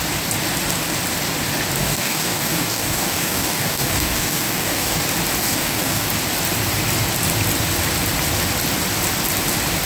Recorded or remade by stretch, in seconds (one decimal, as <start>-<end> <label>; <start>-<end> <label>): 0.0-1.8 recorded; 1.8-5.0 remade; 5.0-5.4 recorded; 5.4-6.1 remade; 6.1-9.9 recorded